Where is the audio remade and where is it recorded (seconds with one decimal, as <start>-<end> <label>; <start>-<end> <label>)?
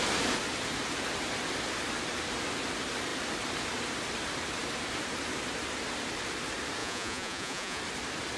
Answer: 0.0-6.8 recorded; 6.8-7.8 remade; 7.8-8.4 recorded